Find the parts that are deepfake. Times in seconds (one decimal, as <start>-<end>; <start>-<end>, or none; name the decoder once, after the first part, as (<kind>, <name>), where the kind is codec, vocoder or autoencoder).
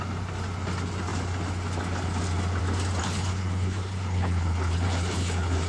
3.0-5.7 (codec, HILCodec)